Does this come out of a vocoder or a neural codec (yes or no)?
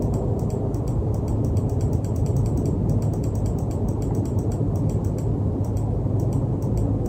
yes